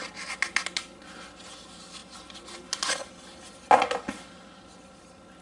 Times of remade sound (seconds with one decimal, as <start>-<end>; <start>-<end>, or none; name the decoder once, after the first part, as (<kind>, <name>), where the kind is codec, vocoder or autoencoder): none